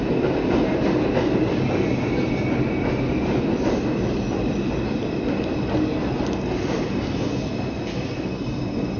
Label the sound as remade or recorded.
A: recorded